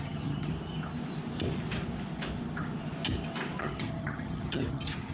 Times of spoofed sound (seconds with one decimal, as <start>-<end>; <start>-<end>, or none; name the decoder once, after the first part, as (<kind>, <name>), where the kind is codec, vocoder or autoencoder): 0.0-0.5 (vocoder, HiFi-GAN); 3.6-5.1